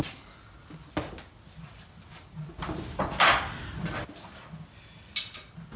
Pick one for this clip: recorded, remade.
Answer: recorded